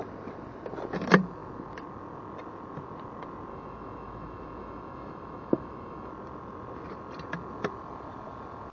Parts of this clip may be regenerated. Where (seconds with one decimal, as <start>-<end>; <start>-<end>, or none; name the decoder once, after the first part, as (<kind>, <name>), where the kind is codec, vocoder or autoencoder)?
3.5-6.1 (autoencoder, DAC-VAE)